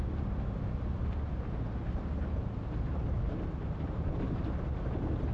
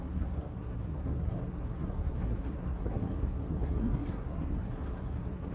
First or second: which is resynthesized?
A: second